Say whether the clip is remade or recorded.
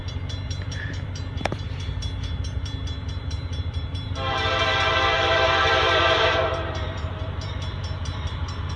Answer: remade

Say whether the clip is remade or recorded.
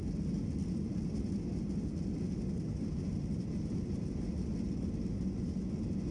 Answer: recorded